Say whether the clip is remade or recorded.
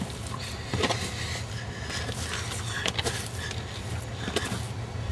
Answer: recorded